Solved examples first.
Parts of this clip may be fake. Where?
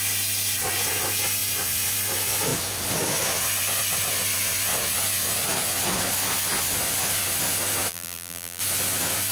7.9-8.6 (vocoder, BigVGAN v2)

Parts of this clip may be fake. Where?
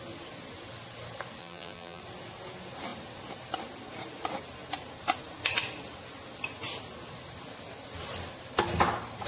1.4-2.0 (vocoder, BigVGAN v2)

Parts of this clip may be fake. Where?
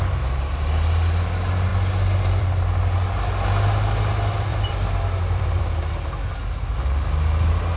1.7-2.6 (vocoder, BigVGAN v2); 4.5-5.9